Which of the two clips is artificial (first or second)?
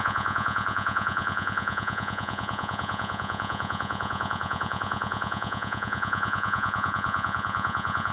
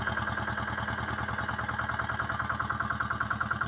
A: first